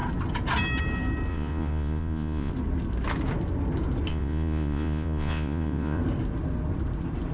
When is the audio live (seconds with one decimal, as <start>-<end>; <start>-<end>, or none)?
0.0-1.3; 2.5-4.1; 6.0-7.3